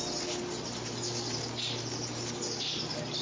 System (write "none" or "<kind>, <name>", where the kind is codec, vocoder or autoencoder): none